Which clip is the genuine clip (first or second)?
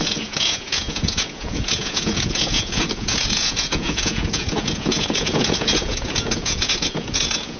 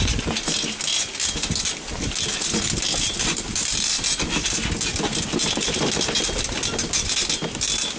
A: second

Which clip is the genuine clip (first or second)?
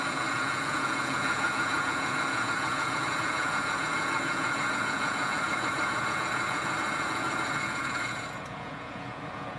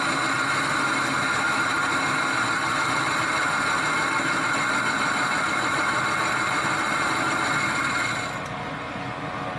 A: second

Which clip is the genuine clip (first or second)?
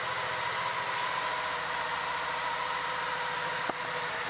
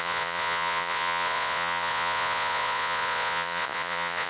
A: first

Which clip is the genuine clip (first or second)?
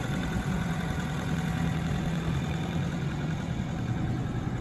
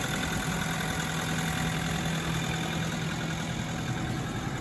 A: second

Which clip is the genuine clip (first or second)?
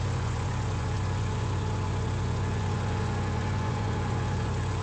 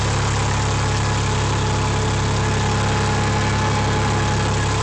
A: second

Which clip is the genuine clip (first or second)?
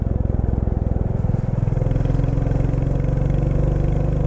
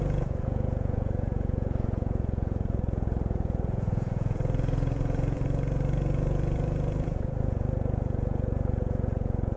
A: first